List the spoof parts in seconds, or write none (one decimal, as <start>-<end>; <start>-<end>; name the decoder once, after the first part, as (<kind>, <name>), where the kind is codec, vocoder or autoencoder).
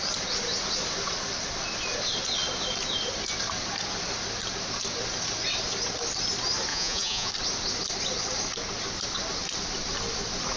6.7-7.3 (vocoder, Vocos)